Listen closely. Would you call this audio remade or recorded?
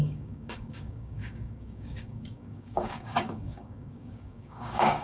remade